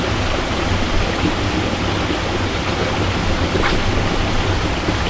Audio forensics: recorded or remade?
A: recorded